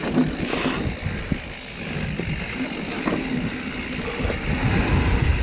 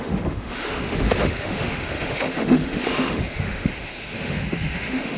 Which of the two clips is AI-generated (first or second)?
second